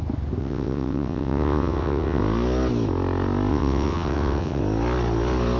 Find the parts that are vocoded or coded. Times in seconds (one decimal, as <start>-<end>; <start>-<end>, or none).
0.4-2.2; 3.5-4.6